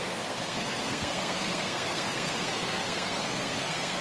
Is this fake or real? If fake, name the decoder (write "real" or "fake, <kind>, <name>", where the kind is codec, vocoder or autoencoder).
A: fake, codec, SNAC